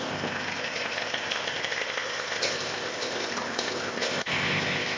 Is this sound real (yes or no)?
no